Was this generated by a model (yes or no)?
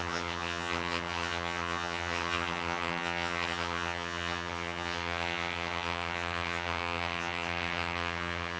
yes